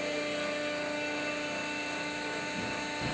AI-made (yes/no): no